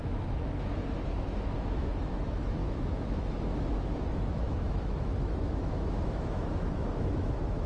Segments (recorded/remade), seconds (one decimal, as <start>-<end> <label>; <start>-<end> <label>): 0.0-7.7 remade